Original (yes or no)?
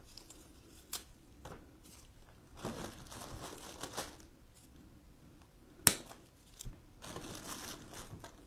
yes